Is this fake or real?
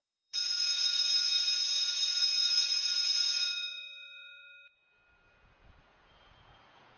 fake